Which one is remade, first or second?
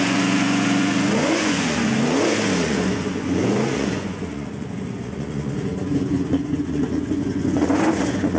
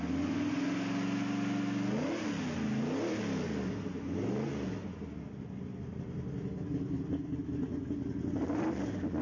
first